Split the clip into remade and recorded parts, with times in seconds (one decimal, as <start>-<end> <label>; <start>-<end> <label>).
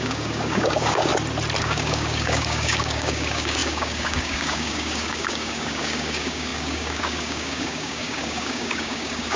0.0-1.1 remade; 1.1-1.6 recorded; 1.6-9.4 remade